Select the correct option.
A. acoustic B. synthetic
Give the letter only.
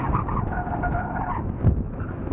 A